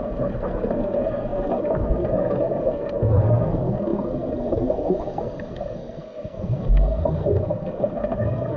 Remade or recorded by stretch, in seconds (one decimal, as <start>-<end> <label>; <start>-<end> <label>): 0.0-8.6 remade